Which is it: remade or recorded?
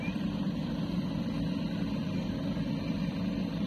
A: remade